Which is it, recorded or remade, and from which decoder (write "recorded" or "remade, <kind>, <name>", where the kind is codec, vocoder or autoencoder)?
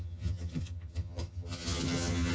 remade, vocoder, HiFi-GAN